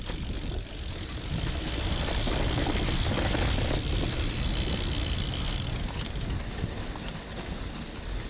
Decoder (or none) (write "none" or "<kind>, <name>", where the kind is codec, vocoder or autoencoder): none